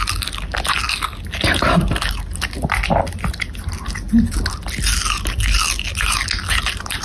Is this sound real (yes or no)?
yes